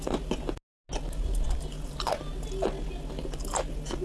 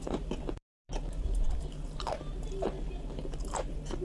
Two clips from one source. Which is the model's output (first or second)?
second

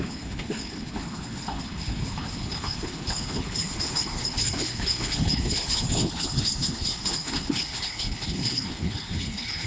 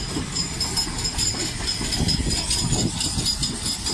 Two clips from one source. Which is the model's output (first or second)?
first